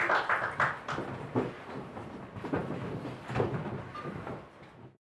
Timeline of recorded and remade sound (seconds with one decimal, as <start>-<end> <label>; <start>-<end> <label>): 0.0-5.0 recorded